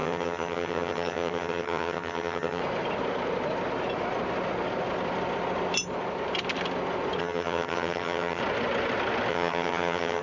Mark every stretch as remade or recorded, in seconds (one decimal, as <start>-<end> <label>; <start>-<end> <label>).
0.0-2.6 remade; 2.6-7.2 recorded; 7.2-8.4 remade; 8.4-9.3 recorded; 9.3-10.2 remade